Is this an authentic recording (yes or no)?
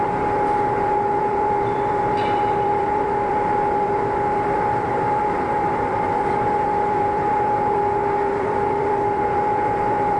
no